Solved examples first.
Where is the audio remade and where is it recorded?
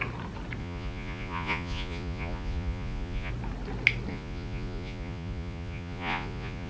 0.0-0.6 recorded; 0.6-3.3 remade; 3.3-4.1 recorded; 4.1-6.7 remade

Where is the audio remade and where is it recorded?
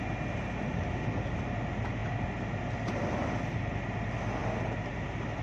0.0-5.4 recorded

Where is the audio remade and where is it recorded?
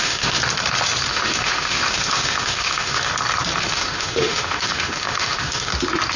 0.0-0.4 remade; 0.4-1.1 recorded; 1.1-3.1 remade; 3.1-3.6 recorded; 3.6-5.7 remade; 5.7-6.2 recorded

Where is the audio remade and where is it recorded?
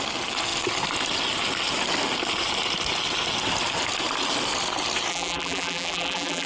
0.0-5.1 recorded; 5.1-6.5 remade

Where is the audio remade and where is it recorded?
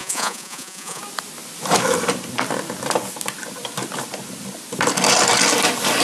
0.0-1.0 remade; 1.0-6.0 recorded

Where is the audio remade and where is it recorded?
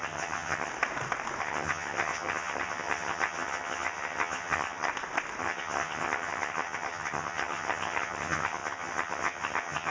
0.0-0.7 remade; 0.7-1.4 recorded; 1.4-4.9 remade; 4.9-5.4 recorded; 5.4-9.9 remade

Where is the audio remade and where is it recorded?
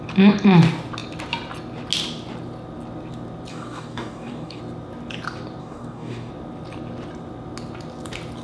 0.0-3.5 recorded; 3.5-4.6 remade; 4.6-5.6 recorded; 5.6-6.3 remade; 6.3-8.4 recorded